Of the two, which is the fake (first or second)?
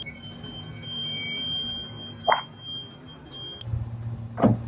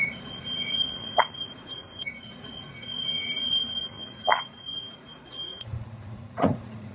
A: second